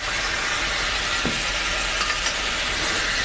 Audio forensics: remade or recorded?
recorded